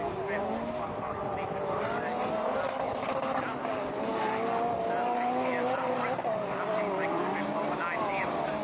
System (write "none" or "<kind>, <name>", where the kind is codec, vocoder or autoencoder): none